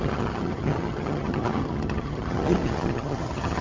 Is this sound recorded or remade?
remade